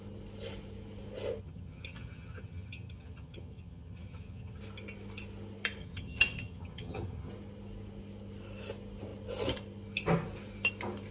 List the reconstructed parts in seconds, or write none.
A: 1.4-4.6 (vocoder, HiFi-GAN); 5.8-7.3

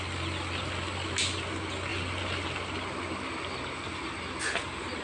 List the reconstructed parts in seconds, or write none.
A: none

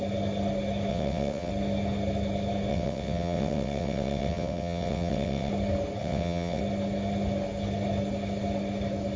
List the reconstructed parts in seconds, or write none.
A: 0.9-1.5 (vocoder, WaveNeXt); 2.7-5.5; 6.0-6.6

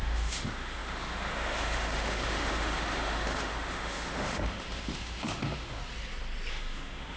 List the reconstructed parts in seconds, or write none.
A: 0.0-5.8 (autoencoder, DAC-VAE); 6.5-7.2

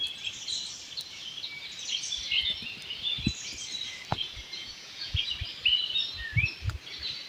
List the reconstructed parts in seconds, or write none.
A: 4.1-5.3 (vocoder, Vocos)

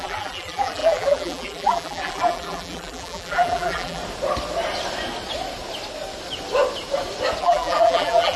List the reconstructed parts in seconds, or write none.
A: 0.0-4.0 (vocoder, BigVGAN v2); 7.4-8.4

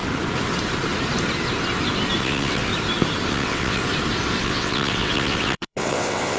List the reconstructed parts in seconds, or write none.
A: 2.2-2.7 (vocoder, WaveNeXt); 3.3-3.8; 4.4-6.4